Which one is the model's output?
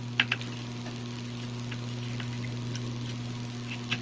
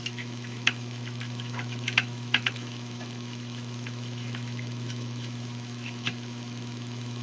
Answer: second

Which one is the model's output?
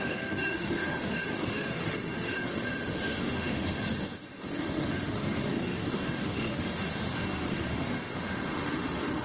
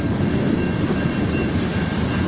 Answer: first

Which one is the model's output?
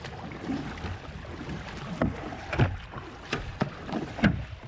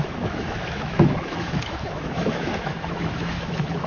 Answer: second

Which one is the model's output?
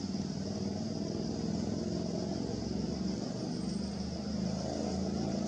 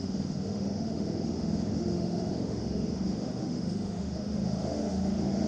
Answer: second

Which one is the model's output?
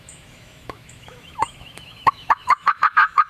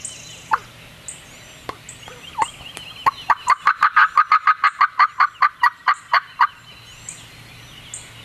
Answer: first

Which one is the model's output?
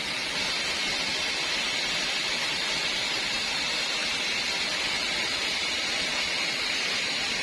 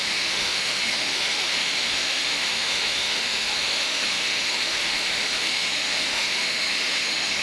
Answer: second